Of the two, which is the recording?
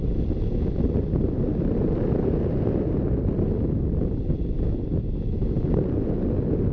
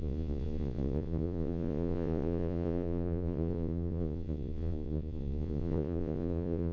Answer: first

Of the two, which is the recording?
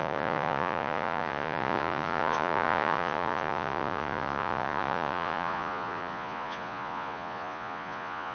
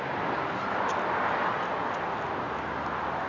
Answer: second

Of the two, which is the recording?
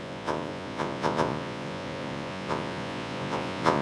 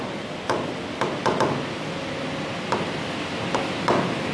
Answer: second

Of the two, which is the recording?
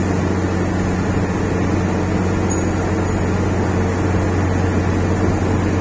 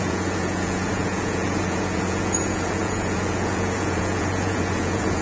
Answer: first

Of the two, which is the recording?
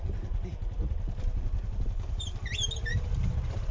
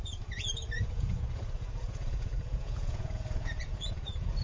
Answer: first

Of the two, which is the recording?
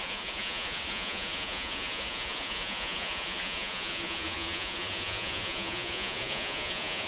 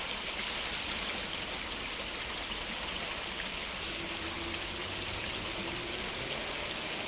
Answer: second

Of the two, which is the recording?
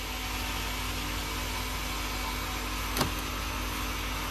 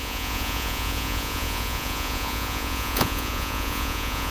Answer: first